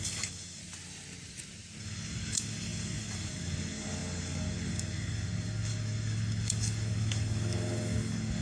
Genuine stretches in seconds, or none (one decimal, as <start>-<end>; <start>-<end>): 0.6-1.8